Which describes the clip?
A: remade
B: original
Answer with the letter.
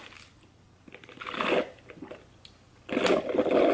B